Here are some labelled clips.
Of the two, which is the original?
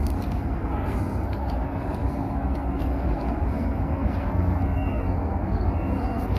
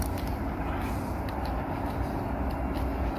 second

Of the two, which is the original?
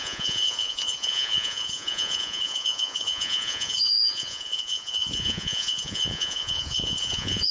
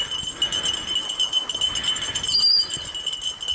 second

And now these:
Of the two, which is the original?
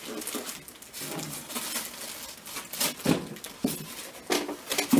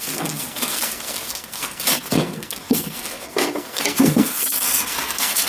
first